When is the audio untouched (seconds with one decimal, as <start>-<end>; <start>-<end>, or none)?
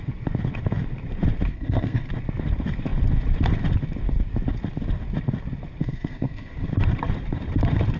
0.0-1.5; 2.1-5.8; 6.7-8.0